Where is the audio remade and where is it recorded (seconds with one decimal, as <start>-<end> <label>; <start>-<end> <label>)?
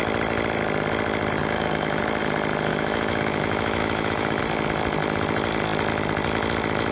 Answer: 0.0-1.4 recorded; 1.4-2.0 remade; 2.0-2.7 recorded; 2.7-4.4 remade; 4.4-6.9 recorded